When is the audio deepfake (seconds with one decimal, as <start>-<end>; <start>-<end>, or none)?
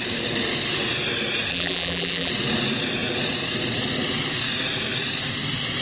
1.5-2.3